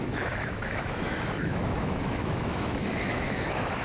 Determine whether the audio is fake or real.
fake